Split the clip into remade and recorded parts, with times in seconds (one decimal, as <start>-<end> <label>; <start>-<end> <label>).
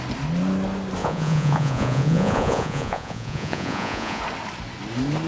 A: 0.0-1.0 recorded; 1.0-4.2 remade; 4.2-5.3 recorded